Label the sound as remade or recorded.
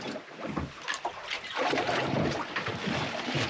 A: recorded